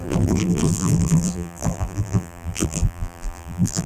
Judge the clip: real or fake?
fake